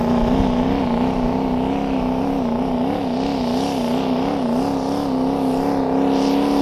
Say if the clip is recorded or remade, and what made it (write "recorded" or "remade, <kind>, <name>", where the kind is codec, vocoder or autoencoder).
recorded